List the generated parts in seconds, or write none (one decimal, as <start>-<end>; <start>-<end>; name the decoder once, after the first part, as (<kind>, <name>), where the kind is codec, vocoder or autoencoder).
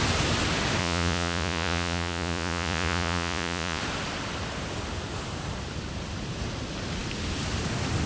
0.8-3.8 (vocoder, Vocos)